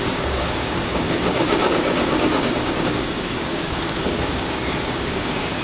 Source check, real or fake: fake